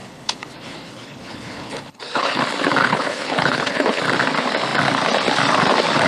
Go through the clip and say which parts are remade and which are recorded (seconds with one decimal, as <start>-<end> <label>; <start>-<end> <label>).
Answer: 0.0-2.4 remade; 2.4-2.8 recorded; 2.8-4.0 remade; 4.0-6.1 recorded